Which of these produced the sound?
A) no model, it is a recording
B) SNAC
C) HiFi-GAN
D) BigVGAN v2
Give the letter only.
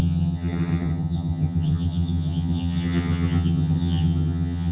C